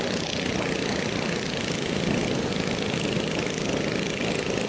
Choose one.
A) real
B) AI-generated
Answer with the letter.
A